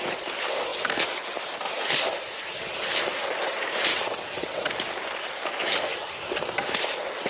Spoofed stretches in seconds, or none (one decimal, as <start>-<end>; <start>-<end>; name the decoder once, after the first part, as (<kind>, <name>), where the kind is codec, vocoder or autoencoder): 3.9-4.7 (vocoder, WaveNeXt)